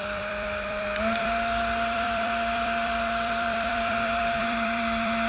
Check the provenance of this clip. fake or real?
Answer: fake